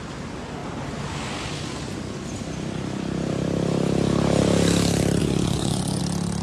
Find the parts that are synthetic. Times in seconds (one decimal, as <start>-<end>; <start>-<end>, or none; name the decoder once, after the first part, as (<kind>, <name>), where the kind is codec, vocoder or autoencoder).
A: 5.2-6.0 (vocoder, Vocos)